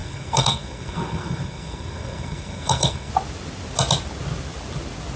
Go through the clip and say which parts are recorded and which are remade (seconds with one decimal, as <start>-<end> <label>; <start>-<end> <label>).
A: 0.0-3.1 remade; 3.1-5.2 recorded